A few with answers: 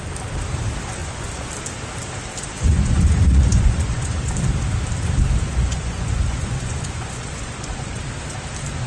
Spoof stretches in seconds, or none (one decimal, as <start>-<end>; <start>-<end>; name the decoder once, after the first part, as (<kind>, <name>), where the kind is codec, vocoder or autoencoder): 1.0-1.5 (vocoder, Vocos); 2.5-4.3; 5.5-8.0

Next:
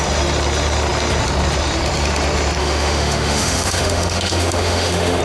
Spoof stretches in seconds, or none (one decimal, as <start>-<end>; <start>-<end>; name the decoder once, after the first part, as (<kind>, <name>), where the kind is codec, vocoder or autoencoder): 2.6-5.2 (autoencoder, DAC-VAE)

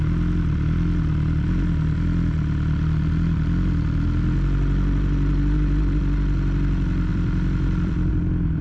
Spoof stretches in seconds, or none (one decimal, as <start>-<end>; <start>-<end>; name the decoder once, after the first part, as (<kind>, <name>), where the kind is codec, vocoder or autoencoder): 7.1-8.1 (vocoder, BigVGAN v2)